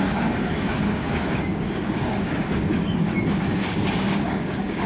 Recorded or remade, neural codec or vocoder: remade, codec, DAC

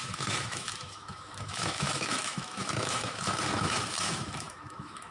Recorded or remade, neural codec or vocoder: remade, autoencoder, DAC-VAE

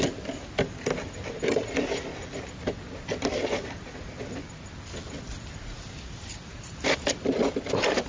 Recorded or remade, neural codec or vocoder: recorded